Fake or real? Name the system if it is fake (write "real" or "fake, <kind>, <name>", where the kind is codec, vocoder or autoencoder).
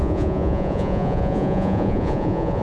fake, vocoder, Vocos